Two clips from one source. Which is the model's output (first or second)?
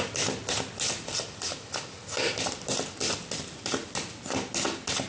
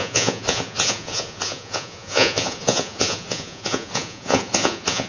second